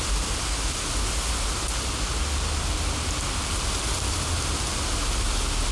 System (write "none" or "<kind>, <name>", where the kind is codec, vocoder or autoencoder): none